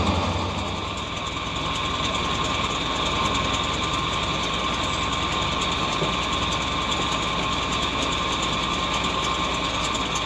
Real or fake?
real